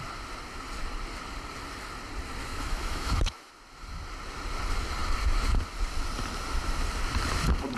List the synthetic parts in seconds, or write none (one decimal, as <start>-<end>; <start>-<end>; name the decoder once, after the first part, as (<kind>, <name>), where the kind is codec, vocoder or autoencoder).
2.4-3.5 (autoencoder, DAC-VAE)